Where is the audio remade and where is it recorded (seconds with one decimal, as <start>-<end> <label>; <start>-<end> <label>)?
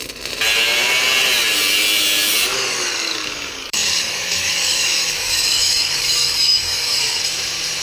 0.0-2.5 recorded; 2.5-7.2 remade; 7.2-7.8 recorded